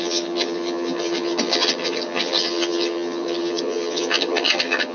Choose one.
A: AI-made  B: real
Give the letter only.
A